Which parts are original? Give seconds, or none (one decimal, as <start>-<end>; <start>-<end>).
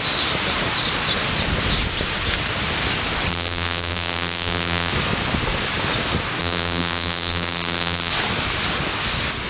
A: 0.0-3.3; 4.9-6.4; 8.1-9.5